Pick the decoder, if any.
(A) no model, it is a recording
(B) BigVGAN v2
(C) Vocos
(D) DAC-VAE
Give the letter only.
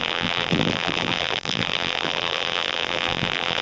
B